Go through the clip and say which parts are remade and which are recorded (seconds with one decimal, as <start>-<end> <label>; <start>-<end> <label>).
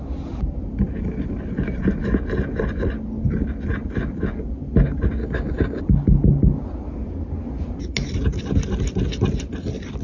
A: 0.0-5.2 recorded; 5.2-5.8 remade; 5.8-10.0 recorded